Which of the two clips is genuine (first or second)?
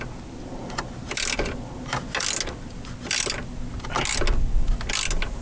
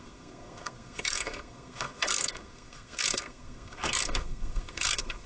first